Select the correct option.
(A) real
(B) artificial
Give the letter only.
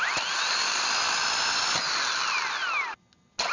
A